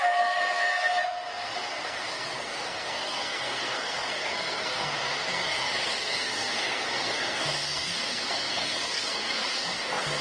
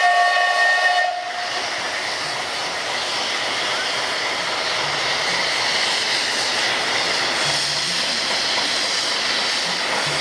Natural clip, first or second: second